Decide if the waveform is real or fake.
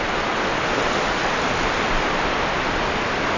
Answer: real